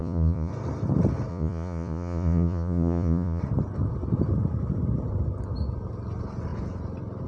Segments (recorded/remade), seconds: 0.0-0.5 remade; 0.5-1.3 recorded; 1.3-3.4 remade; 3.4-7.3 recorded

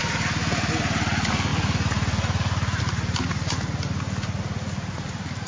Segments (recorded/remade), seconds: 0.0-5.5 recorded

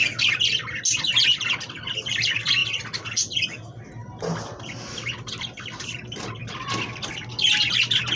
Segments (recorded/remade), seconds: 0.0-8.2 recorded

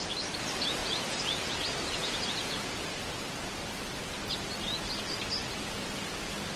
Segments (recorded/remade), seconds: 0.0-0.8 recorded; 0.8-3.1 remade; 3.1-6.6 recorded